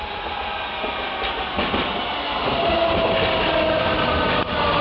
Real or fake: real